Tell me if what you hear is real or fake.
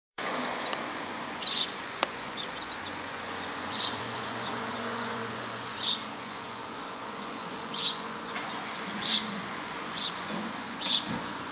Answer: fake